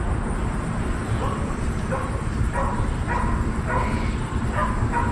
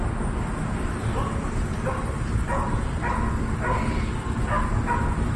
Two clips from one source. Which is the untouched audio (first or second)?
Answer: second